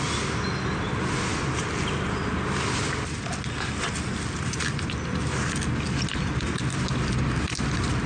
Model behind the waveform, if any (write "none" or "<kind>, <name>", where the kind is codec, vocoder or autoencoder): none